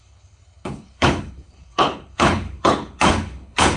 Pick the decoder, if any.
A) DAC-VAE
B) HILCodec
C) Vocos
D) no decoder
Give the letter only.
B